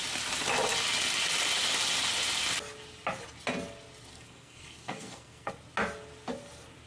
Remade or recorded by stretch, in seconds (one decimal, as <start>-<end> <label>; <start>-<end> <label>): 0.0-4.1 recorded; 4.1-5.5 remade; 5.5-6.9 recorded